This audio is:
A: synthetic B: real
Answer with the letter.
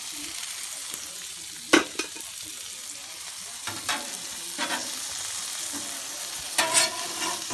B